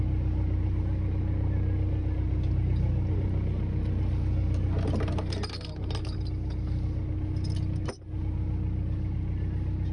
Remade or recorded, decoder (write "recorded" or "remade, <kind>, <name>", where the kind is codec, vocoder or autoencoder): recorded